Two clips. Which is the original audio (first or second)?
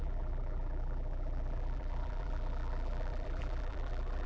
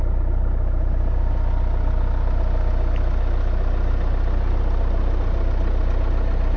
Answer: second